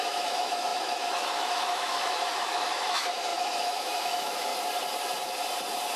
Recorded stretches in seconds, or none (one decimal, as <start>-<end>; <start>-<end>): 4.5-6.0